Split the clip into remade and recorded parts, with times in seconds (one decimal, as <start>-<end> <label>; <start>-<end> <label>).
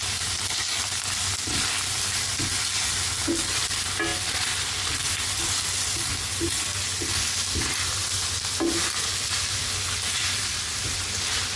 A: 0.0-10.2 recorded; 10.2-11.0 remade; 11.0-11.6 recorded